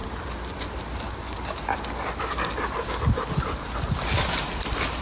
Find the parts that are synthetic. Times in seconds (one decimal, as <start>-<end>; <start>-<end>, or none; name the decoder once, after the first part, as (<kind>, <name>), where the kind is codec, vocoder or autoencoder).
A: none